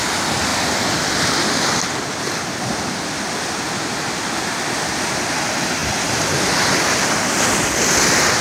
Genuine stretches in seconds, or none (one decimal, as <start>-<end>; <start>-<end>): 0.0-8.4